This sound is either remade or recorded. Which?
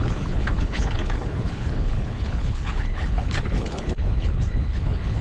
remade